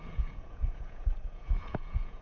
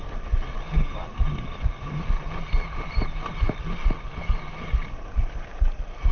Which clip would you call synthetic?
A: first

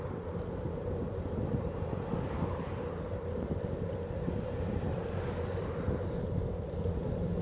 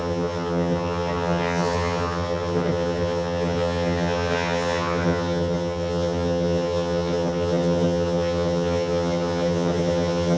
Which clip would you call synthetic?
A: second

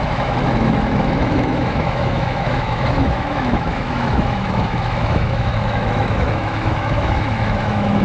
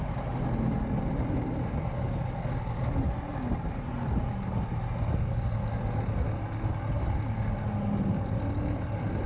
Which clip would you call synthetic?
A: first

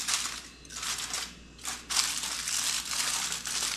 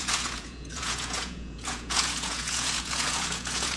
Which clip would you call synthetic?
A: second